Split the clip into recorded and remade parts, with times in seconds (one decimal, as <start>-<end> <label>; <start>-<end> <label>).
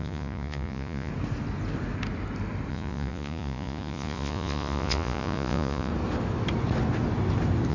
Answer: 0.0-1.1 remade; 1.1-2.7 recorded; 2.7-5.9 remade; 5.9-7.7 recorded